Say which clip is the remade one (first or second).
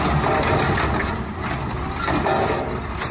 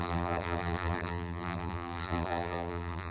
second